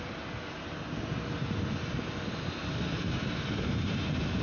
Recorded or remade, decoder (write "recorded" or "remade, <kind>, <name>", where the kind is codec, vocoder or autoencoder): recorded